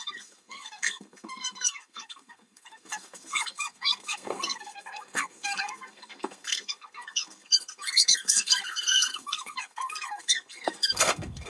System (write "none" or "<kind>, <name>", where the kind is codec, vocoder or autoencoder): codec, SNAC